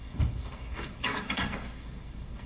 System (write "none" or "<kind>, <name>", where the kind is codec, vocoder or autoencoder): codec, SNAC